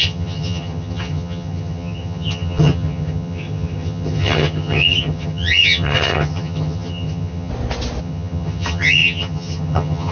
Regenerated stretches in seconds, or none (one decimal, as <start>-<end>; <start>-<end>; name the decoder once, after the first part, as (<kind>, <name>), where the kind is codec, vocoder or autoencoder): 0.0-7.5 (vocoder, HiFi-GAN); 8.0-10.1